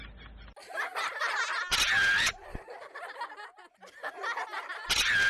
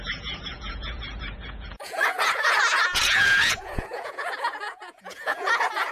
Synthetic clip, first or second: second